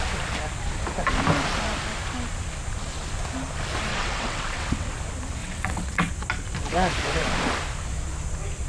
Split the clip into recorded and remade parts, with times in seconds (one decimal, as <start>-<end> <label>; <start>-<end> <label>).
0.0-3.9 recorded; 3.9-4.9 remade; 4.9-5.4 recorded; 5.4-6.1 remade; 6.1-8.7 recorded